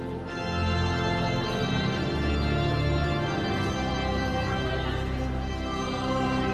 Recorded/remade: recorded